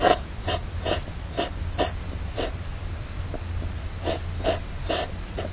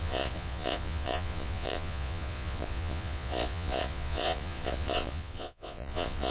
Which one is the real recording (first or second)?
first